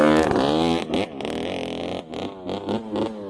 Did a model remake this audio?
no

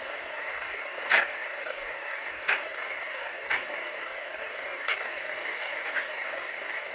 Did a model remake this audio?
yes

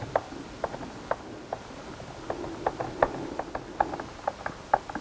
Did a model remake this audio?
no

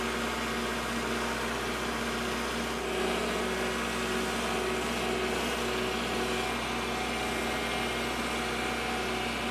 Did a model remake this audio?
no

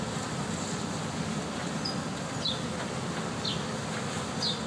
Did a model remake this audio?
no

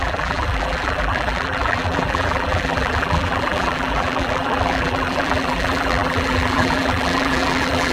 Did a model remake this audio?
yes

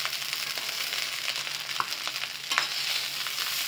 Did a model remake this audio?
no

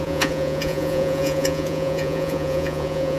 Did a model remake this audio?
yes